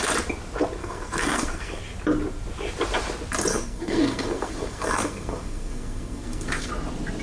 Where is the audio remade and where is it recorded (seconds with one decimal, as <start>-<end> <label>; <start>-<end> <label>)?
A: 0.0-0.8 recorded; 0.8-1.8 remade; 1.8-3.5 recorded; 3.5-6.7 remade; 6.7-7.2 recorded